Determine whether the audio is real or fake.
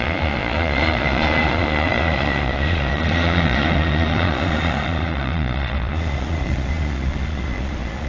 fake